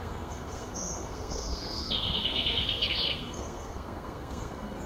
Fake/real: fake